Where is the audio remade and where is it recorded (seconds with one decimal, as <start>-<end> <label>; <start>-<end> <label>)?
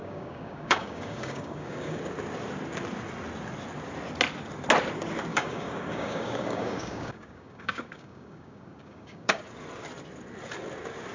0.0-2.0 remade; 2.0-5.3 recorded; 5.3-9.4 remade; 9.4-11.1 recorded